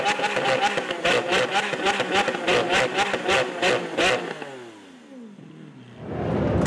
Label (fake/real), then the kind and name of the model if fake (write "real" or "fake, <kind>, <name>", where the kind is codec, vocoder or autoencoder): real